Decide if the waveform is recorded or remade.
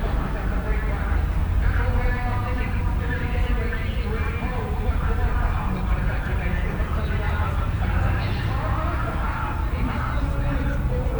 recorded